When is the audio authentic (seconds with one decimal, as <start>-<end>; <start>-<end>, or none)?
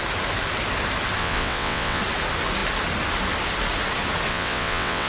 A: 0.0-1.2; 2.0-4.3